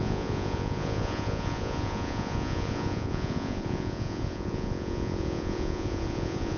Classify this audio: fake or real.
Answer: fake